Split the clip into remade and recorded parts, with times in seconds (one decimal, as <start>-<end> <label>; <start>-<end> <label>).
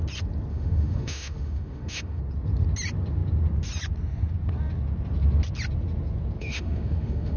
0.0-0.5 recorded; 0.5-2.2 remade; 2.2-6.4 recorded; 6.4-7.4 remade